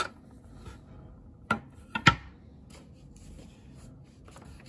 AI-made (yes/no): no